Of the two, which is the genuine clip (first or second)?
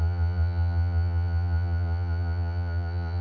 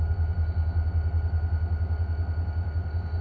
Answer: second